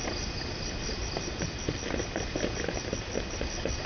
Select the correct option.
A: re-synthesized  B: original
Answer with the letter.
B